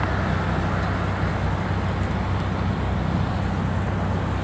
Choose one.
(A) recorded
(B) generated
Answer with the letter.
A